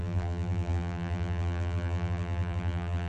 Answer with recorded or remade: remade